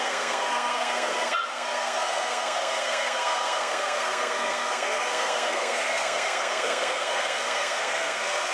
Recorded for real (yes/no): no